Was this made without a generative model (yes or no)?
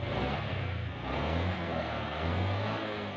no